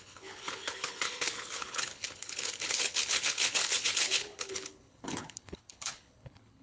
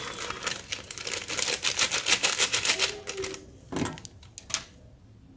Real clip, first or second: second